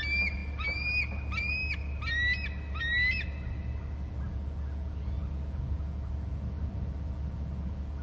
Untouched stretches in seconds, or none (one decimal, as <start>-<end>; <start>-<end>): 0.0-8.0